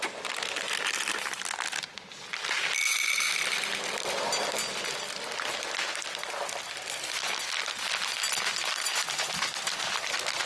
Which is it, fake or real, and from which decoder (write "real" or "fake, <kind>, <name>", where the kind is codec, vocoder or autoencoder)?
real